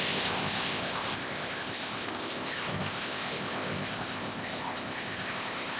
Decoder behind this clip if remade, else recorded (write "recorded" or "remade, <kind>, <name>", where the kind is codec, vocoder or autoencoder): remade, codec, ZipCodec